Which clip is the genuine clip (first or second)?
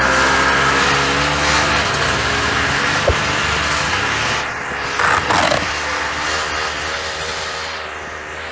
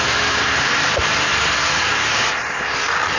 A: first